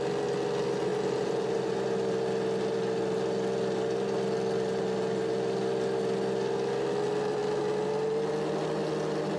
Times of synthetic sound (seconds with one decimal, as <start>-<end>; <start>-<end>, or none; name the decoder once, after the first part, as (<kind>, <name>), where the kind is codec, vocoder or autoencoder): none